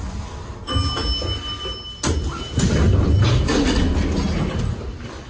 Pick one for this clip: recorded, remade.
recorded